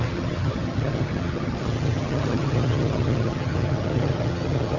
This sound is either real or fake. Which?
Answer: fake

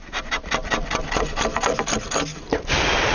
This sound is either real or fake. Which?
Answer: real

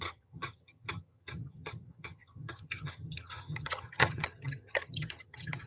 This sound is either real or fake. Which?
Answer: fake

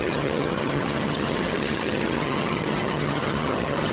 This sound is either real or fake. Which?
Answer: fake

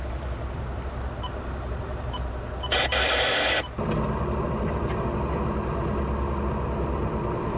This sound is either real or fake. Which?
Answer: real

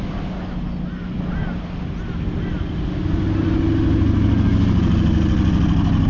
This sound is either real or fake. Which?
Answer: real